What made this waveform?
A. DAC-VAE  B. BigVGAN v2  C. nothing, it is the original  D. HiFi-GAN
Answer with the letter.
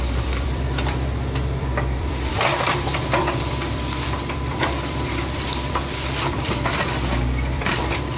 B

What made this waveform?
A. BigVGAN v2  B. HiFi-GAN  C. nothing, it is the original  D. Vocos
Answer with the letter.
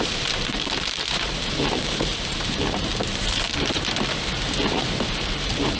A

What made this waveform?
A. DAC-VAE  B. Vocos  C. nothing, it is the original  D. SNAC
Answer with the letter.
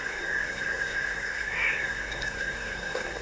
D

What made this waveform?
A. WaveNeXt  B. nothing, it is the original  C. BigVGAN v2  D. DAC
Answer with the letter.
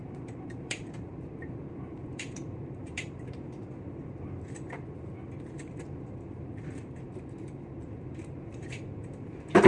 C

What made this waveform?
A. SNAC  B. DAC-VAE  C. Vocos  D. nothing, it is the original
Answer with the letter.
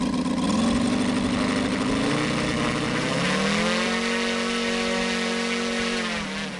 D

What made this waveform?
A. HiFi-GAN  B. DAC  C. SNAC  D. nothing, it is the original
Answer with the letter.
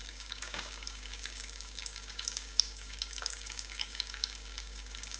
B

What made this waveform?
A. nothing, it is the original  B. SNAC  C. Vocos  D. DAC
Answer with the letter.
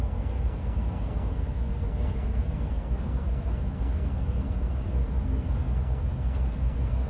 B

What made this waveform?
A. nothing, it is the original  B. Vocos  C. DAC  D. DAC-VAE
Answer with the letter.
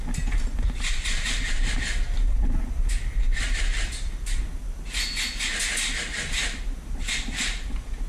A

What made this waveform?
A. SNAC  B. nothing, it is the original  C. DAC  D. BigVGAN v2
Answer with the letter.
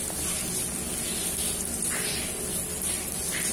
B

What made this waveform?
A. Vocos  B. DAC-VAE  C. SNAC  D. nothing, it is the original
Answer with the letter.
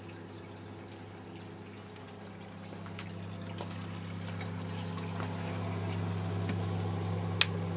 D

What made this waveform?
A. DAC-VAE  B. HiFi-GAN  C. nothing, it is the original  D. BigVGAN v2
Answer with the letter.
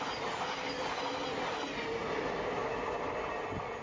C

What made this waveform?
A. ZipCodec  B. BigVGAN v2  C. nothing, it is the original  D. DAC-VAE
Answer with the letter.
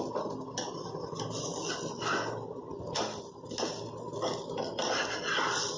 C